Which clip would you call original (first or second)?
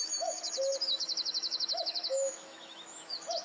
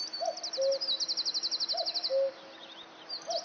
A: second